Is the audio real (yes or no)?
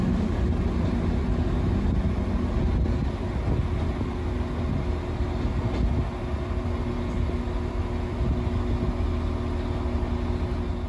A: yes